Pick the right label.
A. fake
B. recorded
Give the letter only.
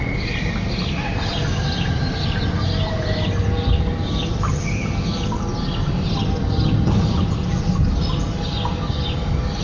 B